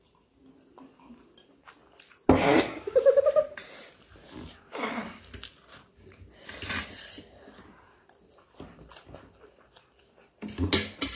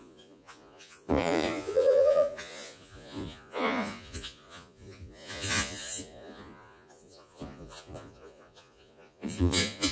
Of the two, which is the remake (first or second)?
second